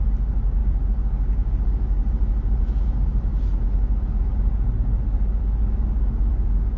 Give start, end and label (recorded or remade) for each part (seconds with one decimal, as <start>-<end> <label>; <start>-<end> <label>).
0.0-6.8 recorded